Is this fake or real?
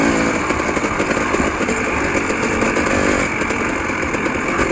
real